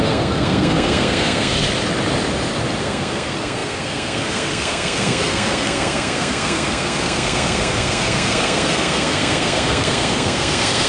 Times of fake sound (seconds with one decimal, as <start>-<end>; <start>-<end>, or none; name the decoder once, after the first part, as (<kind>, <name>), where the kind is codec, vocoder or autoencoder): 0.0-1.5 (codec, SNAC); 2.8-10.9